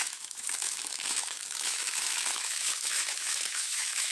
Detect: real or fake fake